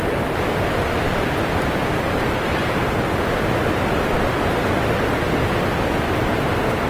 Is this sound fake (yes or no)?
no